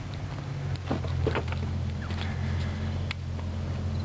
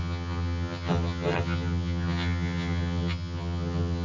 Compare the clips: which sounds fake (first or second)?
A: second